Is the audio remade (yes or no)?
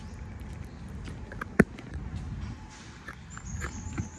no